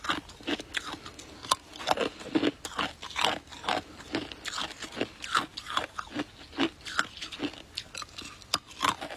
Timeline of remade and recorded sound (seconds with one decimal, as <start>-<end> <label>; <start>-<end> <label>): 0.0-5.5 recorded; 5.5-6.1 remade; 6.1-9.2 recorded

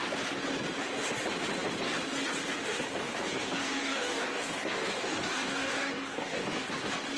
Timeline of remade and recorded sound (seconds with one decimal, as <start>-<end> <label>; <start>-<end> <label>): 0.0-3.0 recorded; 3.0-6.7 remade; 6.7-7.2 recorded

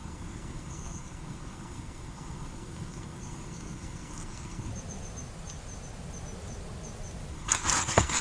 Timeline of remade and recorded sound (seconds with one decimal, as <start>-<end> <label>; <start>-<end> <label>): 0.0-4.7 remade; 4.7-7.3 recorded; 7.3-8.2 remade

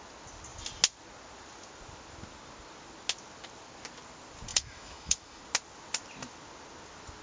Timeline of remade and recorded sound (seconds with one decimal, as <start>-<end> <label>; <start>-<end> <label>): 0.0-4.5 recorded; 4.5-5.4 remade; 5.4-7.2 recorded

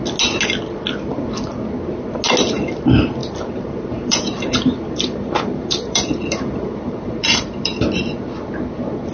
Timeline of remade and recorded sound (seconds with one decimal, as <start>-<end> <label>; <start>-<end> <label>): 0.0-3.2 recorded; 3.2-7.9 remade; 7.9-9.1 recorded

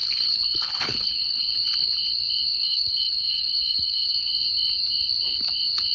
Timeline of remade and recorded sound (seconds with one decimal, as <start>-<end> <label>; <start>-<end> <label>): 0.0-1.5 remade; 1.5-2.5 recorded; 2.5-4.3 remade; 4.3-5.9 recorded

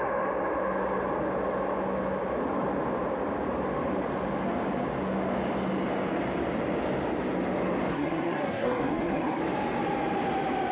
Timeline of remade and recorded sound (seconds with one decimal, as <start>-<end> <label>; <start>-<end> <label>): 0.0-7.9 recorded; 7.9-9.4 remade; 9.4-10.7 recorded

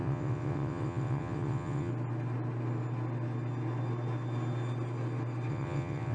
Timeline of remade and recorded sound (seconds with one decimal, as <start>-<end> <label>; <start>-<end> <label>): 0.0-1.9 remade; 1.9-5.5 recorded; 5.5-6.1 remade